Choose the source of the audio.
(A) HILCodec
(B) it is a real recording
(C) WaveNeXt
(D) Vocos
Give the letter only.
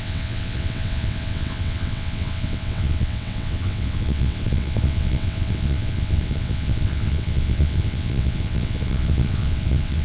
C